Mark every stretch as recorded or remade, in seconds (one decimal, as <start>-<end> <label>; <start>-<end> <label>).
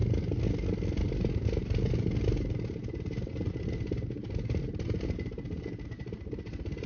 0.0-6.9 recorded